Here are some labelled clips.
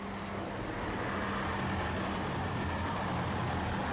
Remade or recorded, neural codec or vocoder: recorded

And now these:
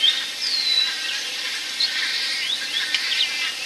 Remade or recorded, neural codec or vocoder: recorded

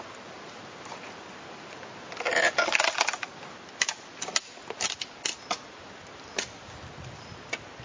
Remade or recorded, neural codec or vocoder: recorded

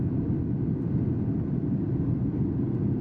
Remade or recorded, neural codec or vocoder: recorded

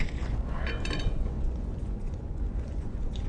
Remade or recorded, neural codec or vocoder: remade, vocoder, Vocos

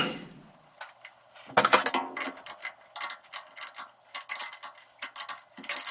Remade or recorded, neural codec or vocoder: recorded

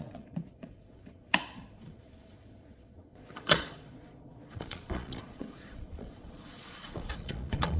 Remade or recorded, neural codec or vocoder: remade, vocoder, Vocos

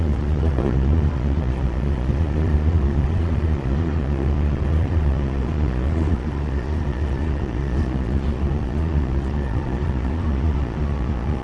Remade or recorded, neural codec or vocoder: remade, vocoder, Vocos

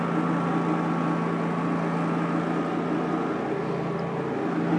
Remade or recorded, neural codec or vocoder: recorded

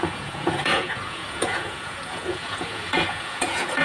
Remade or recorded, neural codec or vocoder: remade, vocoder, Vocos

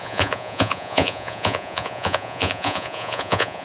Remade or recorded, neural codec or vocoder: remade, vocoder, Vocos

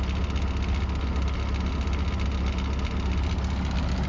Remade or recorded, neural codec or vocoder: recorded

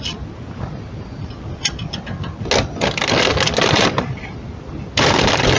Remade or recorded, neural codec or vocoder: recorded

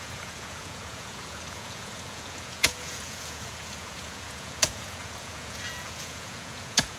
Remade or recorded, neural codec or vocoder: remade, vocoder, Vocos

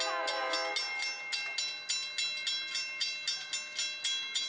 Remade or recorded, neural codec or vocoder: recorded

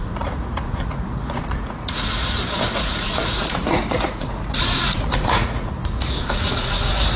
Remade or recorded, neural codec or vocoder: remade, vocoder, Vocos